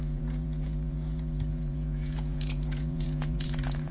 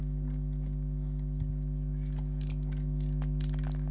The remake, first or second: first